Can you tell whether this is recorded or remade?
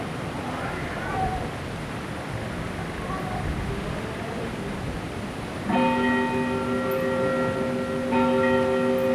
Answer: recorded